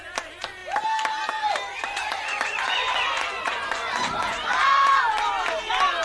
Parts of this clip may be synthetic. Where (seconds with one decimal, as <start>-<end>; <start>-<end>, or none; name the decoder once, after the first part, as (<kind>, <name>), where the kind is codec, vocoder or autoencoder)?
1.8-5.0 (vocoder, Vocos)